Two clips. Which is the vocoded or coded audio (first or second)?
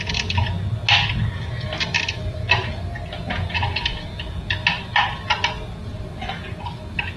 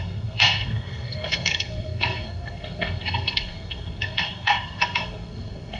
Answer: second